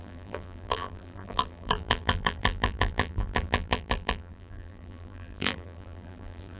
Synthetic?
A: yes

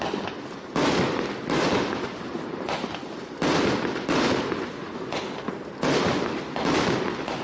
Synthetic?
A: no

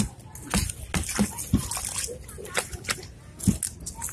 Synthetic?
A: no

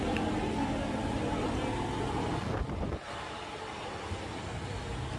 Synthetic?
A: no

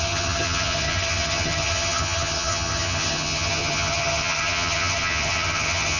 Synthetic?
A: yes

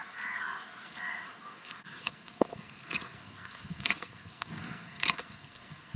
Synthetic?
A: yes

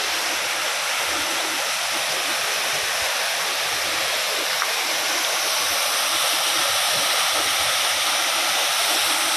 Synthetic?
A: no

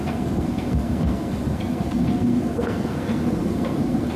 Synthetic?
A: yes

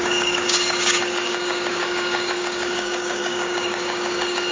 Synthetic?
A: yes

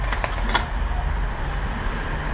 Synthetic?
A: no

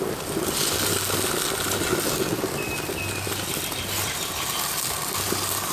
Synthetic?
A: no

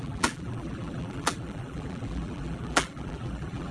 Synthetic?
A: yes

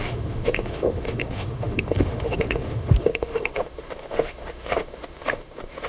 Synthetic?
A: yes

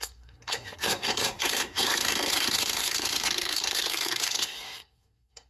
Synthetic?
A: yes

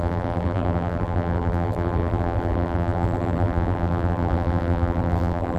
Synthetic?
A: yes